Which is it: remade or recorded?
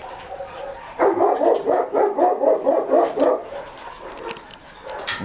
remade